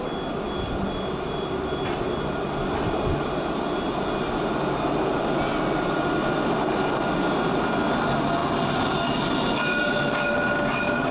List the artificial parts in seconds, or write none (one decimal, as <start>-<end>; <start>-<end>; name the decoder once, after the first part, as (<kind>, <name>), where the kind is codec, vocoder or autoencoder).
none